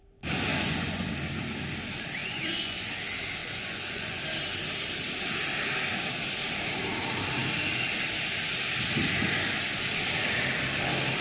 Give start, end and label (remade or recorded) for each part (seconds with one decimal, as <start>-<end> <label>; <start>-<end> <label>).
0.0-0.5 recorded; 0.5-1.1 remade; 1.1-2.2 recorded; 2.2-2.9 remade; 2.9-3.4 recorded; 3.4-4.2 remade; 4.2-11.2 recorded